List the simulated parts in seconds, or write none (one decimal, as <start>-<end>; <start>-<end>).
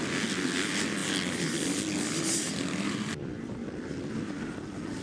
none